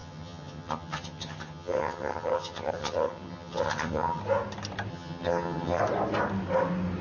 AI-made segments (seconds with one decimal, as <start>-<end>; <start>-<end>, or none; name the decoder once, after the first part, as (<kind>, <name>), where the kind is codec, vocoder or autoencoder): 0.0-4.2 (vocoder, HiFi-GAN); 4.9-5.8